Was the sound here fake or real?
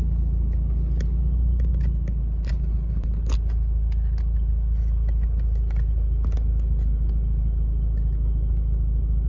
real